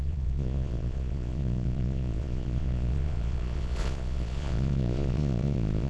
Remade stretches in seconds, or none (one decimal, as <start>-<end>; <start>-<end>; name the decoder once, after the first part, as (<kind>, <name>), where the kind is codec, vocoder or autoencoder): 0.0-5.9 (vocoder, Vocos)